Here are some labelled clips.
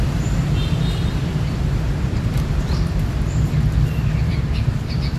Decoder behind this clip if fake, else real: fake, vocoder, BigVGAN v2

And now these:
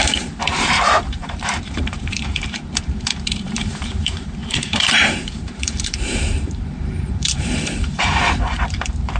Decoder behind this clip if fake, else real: fake, vocoder, BigVGAN v2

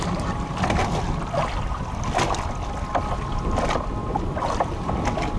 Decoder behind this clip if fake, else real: real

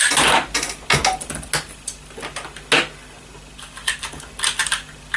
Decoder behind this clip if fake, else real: real